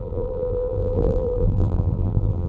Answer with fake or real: fake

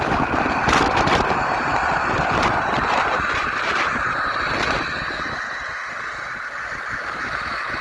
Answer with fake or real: real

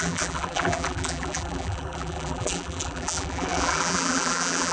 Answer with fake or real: fake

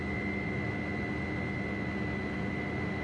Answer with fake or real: real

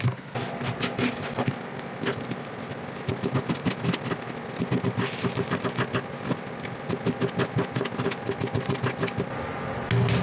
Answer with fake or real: real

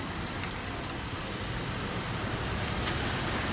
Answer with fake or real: real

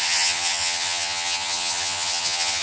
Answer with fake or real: fake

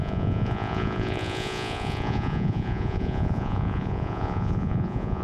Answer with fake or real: fake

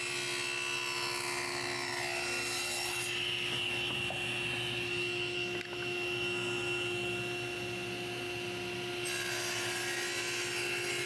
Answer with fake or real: real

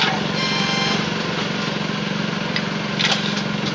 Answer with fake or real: real